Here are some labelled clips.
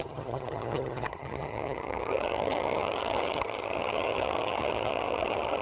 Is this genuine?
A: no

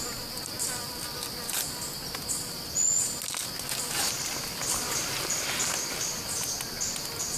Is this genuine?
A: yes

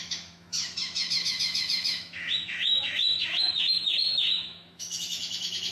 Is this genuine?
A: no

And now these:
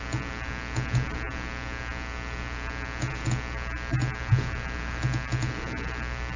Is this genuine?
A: yes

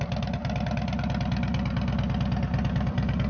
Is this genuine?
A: yes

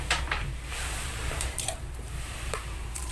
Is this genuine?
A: no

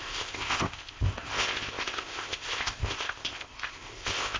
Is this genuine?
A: no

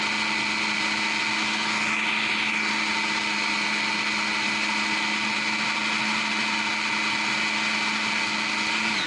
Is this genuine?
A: yes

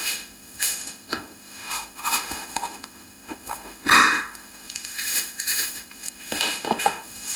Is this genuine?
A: no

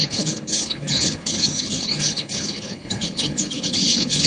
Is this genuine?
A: no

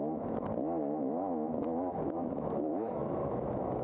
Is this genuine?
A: no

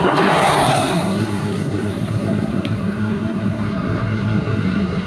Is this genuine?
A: no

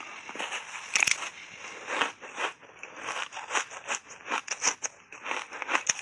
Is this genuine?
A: yes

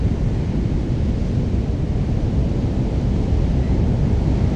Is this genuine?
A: yes